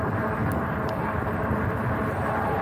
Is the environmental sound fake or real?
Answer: fake